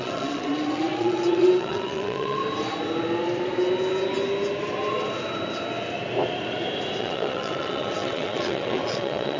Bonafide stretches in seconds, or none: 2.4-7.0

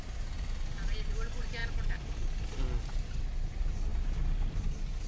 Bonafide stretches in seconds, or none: 0.0-5.1

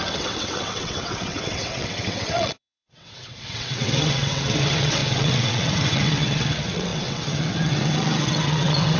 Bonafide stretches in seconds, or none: none

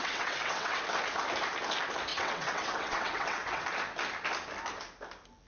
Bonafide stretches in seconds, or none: 0.8-2.1; 3.6-5.5

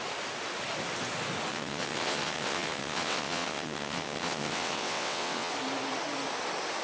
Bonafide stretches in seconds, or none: 0.0-1.5; 5.5-6.8

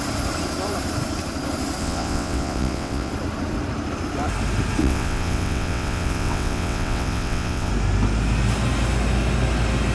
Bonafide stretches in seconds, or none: 0.0-1.8; 3.1-4.8; 7.7-9.9

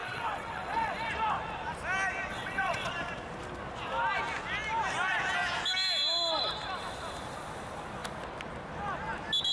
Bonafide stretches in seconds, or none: 1.1-2.3; 2.9-9.5

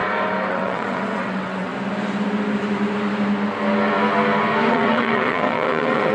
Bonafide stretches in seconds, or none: 0.0-0.5; 1.7-4.7